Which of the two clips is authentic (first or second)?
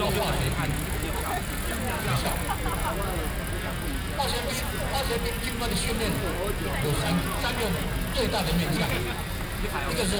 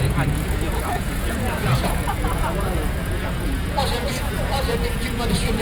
first